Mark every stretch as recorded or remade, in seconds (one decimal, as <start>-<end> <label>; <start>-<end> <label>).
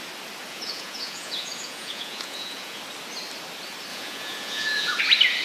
0.0-0.5 recorded; 0.5-2.8 remade; 2.8-3.9 recorded; 3.9-5.0 remade; 5.0-5.4 recorded